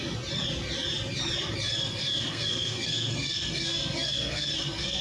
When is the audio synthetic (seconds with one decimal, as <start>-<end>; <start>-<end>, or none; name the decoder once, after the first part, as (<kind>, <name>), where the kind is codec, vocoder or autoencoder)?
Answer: 1.8-5.0 (codec, SNAC)